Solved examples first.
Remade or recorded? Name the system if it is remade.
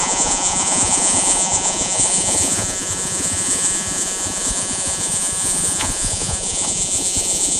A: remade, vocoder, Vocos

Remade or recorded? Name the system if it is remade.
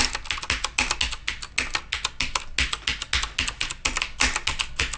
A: recorded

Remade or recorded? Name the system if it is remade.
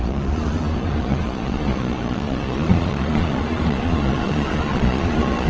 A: remade, vocoder, Vocos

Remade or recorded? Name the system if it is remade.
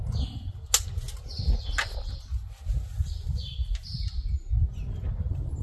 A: recorded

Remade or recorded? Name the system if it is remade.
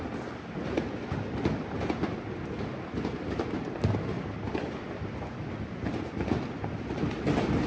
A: recorded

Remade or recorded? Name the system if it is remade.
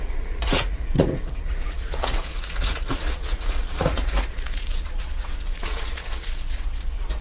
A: remade, vocoder, Vocos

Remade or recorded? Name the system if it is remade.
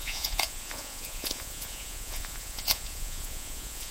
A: remade, vocoder, Vocos